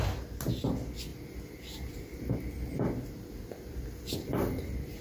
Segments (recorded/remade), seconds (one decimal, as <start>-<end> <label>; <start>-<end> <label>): 0.0-5.0 recorded